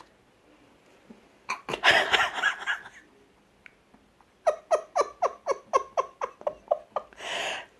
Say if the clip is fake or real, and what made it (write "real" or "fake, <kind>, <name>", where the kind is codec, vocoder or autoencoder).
real